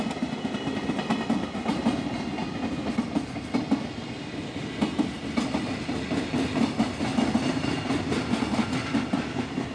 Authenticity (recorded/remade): recorded